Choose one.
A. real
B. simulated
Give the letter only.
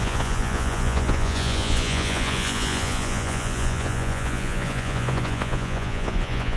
B